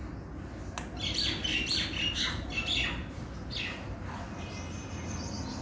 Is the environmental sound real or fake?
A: real